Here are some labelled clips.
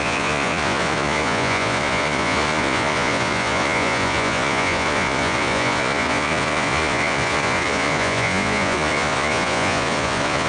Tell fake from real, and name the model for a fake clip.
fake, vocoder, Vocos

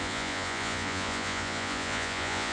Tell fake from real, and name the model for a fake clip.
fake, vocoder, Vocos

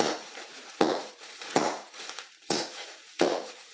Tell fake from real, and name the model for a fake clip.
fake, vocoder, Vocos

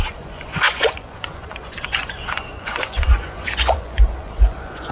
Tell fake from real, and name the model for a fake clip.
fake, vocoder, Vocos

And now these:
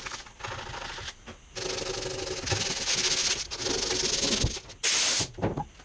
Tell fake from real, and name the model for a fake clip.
real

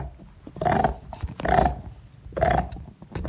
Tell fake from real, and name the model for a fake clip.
real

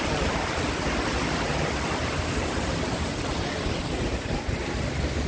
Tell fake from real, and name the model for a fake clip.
real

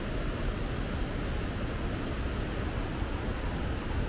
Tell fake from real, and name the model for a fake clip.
real